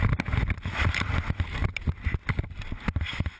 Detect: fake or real real